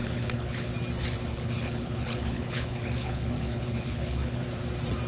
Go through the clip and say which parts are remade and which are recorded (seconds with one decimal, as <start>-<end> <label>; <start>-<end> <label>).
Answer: 0.0-0.7 remade; 0.7-1.3 recorded; 1.3-4.4 remade; 4.4-5.1 recorded